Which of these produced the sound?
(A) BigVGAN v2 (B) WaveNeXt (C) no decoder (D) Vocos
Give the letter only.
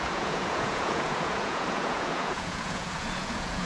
D